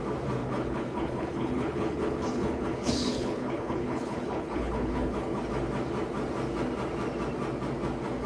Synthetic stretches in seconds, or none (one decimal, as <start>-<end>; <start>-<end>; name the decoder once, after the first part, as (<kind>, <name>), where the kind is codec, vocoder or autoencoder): 0.4-5.4 (codec, HILCodec)